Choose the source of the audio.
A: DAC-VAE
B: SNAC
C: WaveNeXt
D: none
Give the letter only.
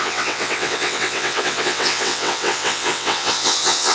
C